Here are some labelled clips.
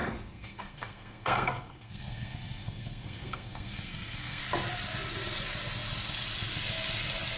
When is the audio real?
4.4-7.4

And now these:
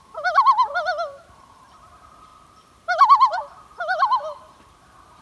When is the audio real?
none

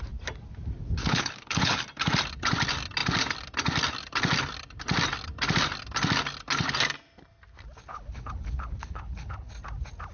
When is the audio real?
0.0-1.0; 1.8-7.9; 9.5-10.1

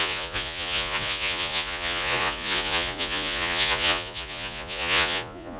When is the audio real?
none

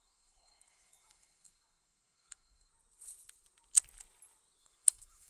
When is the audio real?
2.7-4.6